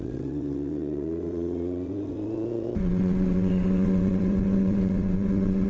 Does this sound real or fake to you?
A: fake